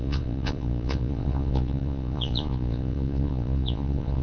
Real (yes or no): no